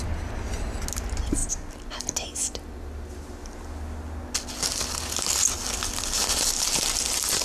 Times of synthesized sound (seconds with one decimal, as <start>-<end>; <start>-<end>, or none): none